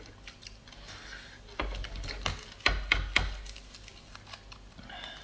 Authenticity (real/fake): real